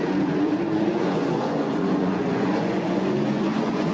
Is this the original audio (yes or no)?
no